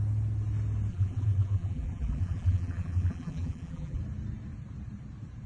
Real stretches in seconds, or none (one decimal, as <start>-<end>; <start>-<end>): 0.0-0.9; 4.0-5.5